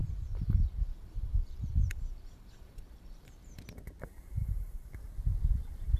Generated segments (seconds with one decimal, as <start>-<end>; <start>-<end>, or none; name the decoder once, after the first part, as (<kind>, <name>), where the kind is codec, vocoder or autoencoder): 0.0-3.6 (vocoder, BigVGAN v2); 4.4-4.9